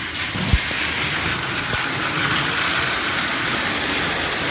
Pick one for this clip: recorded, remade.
recorded